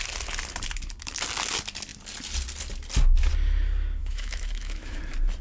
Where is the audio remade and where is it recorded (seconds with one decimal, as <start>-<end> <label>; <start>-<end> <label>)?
0.0-4.0 recorded; 4.0-5.0 remade; 5.0-5.4 recorded